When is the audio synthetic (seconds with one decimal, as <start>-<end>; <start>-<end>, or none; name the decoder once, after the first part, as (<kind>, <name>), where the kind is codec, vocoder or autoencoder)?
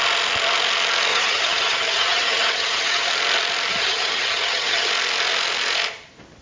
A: 1.1-3.1 (vocoder, HiFi-GAN); 3.7-4.9